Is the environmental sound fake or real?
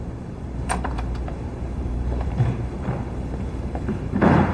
fake